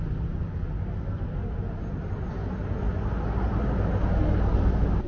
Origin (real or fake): real